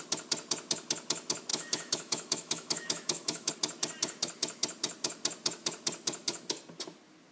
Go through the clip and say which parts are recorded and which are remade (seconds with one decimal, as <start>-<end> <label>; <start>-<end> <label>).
0.0-1.5 recorded; 1.5-3.5 remade; 3.5-7.3 recorded